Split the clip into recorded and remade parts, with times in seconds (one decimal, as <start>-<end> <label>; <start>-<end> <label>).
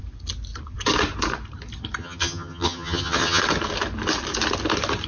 0.0-2.0 recorded; 2.0-3.4 remade; 3.4-5.1 recorded